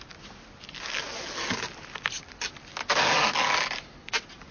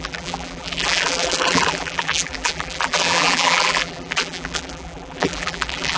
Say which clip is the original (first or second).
first